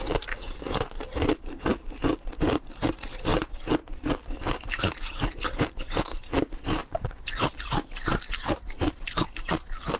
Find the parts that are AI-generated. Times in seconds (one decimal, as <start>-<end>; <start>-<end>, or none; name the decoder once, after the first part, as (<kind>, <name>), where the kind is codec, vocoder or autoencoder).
0.0-1.7 (vocoder, BigVGAN v2); 2.4-3.3; 4.9-10.0